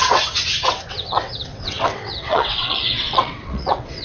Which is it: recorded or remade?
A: remade